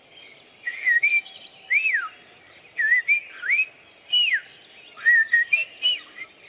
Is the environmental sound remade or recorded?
recorded